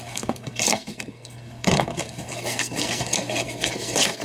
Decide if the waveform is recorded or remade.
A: remade